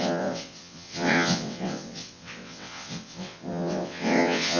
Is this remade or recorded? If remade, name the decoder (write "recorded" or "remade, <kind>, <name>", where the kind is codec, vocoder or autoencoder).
remade, vocoder, WaveNeXt